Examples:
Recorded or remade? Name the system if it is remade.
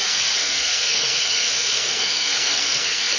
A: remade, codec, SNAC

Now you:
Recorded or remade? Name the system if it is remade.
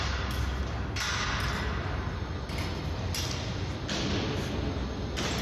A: recorded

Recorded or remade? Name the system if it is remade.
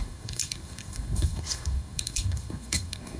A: remade, codec, SNAC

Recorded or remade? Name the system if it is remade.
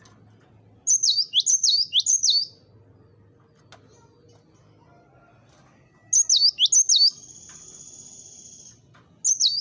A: recorded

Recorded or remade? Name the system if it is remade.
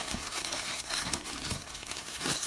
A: remade, codec, SNAC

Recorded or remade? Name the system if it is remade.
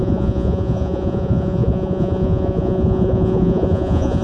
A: remade, vocoder, Vocos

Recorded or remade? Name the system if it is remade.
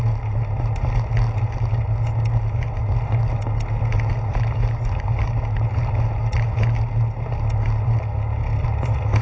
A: recorded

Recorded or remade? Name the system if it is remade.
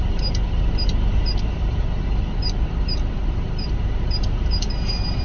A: remade, vocoder, BigVGAN v2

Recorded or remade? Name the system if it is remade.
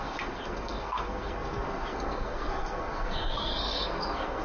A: remade, codec, SNAC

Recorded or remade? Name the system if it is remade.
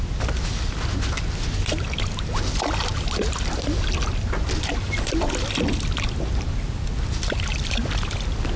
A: recorded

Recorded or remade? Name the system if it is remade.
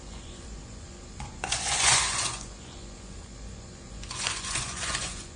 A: remade, vocoder, Vocos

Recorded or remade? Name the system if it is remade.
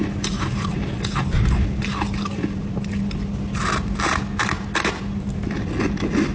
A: recorded